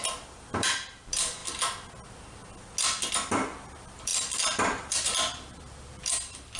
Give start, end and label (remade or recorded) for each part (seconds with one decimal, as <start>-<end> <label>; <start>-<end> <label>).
0.0-1.4 remade; 1.4-3.1 recorded; 3.1-6.6 remade